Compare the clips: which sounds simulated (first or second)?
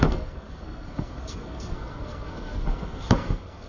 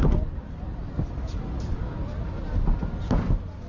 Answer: first